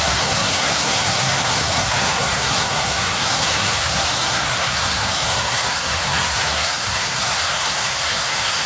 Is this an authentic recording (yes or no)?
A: no